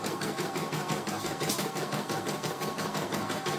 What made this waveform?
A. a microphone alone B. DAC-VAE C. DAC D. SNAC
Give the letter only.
D